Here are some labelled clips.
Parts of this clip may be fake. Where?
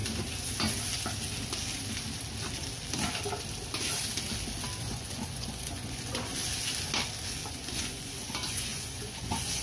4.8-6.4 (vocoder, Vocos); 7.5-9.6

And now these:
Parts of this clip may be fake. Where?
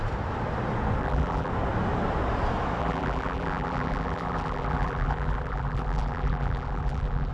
1.0-1.5 (vocoder, BigVGAN v2); 2.8-7.3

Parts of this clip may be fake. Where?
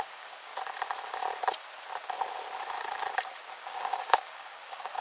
0.0-0.5 (codec, DAC); 3.5-5.0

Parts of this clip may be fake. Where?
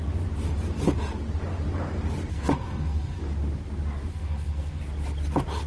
2.3-3.2 (codec, SNAC); 4.1-4.8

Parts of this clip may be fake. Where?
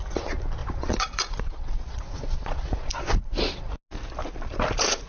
0.6-3.7 (vocoder, Vocos)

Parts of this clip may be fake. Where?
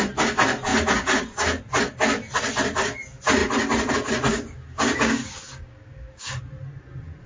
4.3-6.4 (codec, DAC)